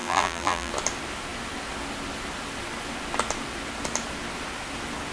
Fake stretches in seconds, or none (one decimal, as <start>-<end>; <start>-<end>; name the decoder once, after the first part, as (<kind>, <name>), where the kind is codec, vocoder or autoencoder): 0.0-0.7 (vocoder, BigVGAN v2)

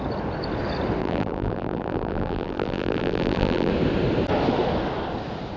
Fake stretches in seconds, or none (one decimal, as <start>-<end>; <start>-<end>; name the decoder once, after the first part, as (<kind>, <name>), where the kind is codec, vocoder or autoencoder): 1.0-3.7 (vocoder, BigVGAN v2)

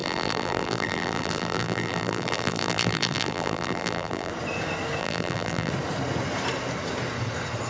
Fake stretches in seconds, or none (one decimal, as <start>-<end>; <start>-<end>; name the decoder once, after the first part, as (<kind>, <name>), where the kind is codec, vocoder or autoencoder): 0.0-4.3 (vocoder, BigVGAN v2); 5.0-5.7

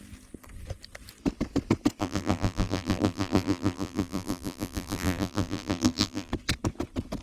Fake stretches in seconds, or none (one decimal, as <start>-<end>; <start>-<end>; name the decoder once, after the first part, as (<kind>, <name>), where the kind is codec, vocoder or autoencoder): 2.0-6.3 (vocoder, BigVGAN v2)

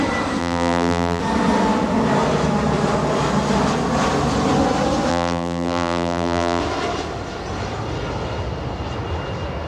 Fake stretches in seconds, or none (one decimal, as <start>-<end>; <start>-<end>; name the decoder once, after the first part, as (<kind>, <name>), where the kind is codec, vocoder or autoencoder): 0.4-1.2 (vocoder, BigVGAN v2); 5.1-6.6